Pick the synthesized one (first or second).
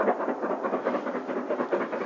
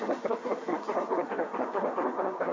second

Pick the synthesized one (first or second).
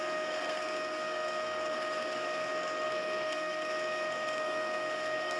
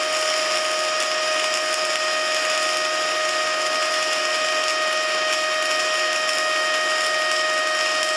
first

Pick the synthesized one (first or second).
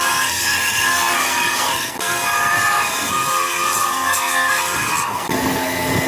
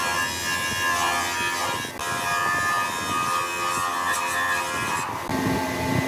first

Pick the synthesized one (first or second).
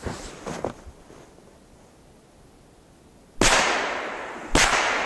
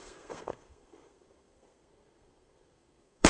second